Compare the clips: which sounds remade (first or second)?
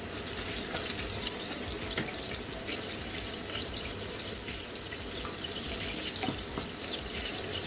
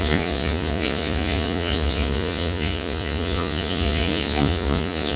second